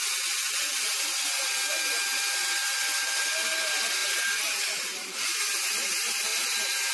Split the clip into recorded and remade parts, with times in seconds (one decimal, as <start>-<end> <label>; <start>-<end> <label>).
0.0-0.4 recorded; 0.4-0.9 remade; 0.9-4.0 recorded; 4.0-5.2 remade; 5.2-6.3 recorded; 6.3-6.9 remade